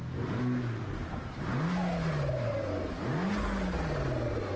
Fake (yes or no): no